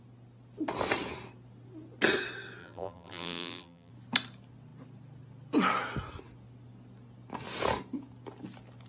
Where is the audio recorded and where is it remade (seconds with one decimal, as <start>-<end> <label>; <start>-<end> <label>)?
0.0-2.6 recorded; 2.6-3.9 remade; 3.9-8.9 recorded